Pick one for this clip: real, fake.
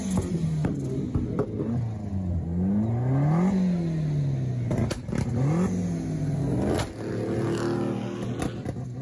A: real